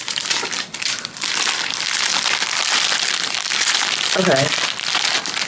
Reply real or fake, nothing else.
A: fake